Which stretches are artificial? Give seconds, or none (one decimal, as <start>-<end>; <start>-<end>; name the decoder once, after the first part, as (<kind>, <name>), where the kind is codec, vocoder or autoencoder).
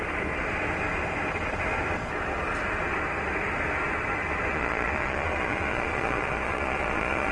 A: 4.5-7.3 (vocoder, Vocos)